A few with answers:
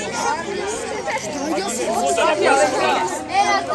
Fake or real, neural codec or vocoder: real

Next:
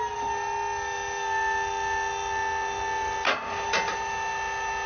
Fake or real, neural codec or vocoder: real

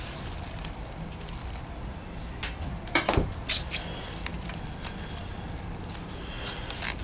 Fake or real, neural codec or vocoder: fake, vocoder, BigVGAN v2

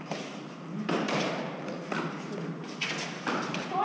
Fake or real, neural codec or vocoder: real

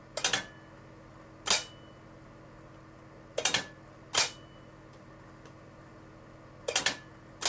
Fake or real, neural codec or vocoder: real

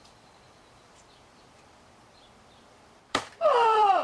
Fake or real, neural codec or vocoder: fake, vocoder, BigVGAN v2